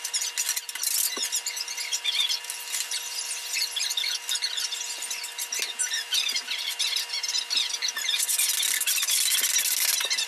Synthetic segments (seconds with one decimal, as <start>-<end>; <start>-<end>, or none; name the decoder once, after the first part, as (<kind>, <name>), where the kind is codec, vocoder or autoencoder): none